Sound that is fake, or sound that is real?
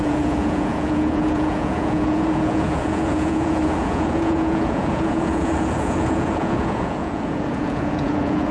fake